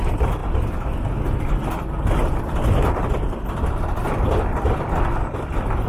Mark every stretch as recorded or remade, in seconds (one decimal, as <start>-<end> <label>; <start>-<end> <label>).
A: 0.0-5.9 recorded

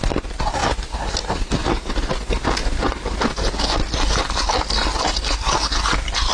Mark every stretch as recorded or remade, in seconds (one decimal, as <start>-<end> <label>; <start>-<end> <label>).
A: 0.0-6.3 recorded

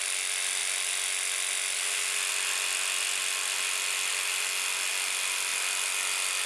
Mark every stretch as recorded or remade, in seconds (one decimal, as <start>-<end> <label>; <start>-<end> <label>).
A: 0.0-6.5 recorded

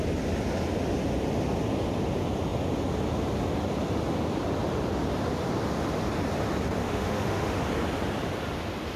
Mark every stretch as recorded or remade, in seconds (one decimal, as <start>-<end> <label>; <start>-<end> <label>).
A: 0.0-6.8 recorded; 6.8-7.6 remade; 7.6-9.0 recorded

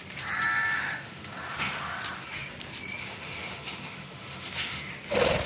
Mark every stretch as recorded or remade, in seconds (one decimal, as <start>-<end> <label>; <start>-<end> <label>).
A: 0.0-0.8 recorded; 0.8-2.0 remade; 2.0-3.0 recorded; 3.0-4.9 remade; 4.9-5.5 recorded

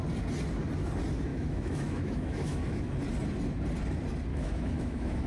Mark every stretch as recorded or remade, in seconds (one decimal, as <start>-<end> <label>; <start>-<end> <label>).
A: 0.0-1.3 recorded; 1.3-2.9 remade; 2.9-4.3 recorded; 4.3-5.3 remade